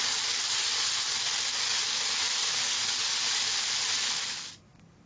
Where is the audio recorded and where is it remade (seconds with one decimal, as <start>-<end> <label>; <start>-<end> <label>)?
0.0-5.1 recorded